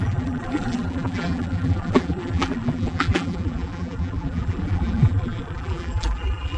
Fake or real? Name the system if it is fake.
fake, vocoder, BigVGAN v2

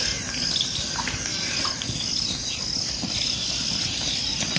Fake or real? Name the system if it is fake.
real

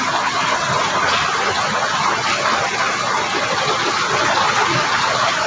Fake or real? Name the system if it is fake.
real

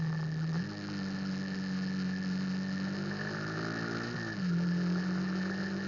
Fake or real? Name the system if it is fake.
real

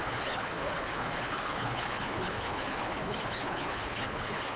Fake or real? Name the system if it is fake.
fake, codec, HILCodec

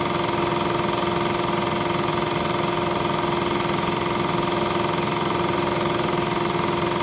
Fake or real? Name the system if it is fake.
real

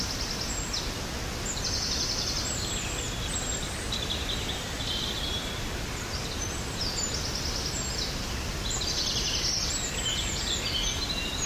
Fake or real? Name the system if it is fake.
real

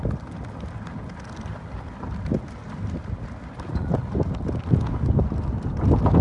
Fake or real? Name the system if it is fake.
real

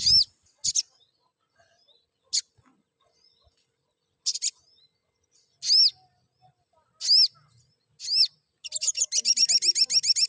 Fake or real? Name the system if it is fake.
real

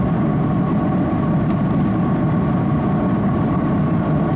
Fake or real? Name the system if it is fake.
real